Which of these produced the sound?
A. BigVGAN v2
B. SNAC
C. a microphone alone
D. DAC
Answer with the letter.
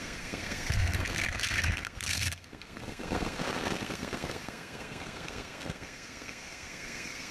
B